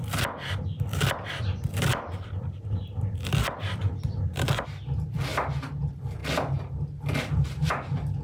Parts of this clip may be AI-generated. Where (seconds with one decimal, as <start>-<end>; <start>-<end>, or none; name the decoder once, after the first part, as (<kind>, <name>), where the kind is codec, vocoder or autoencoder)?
0.0-5.3 (vocoder, BigVGAN v2); 5.8-6.2; 7.2-8.2